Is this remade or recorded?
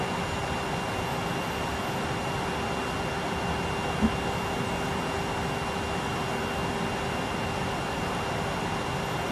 recorded